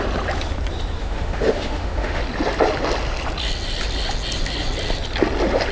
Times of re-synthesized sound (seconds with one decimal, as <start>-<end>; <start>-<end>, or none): 1.0-2.2